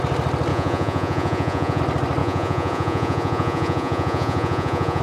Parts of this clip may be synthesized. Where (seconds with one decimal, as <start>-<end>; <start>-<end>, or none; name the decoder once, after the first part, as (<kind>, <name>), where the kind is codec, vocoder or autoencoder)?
0.5-1.8 (vocoder, Vocos); 2.2-5.0